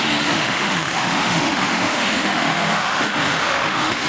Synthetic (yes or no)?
yes